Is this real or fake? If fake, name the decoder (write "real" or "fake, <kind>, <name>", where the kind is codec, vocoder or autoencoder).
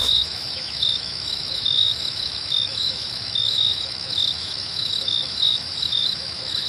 fake, autoencoder, DAC-VAE